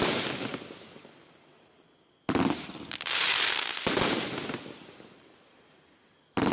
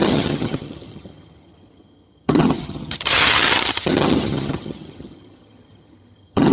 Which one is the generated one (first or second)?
second